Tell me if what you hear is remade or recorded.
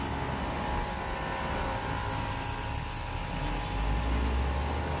recorded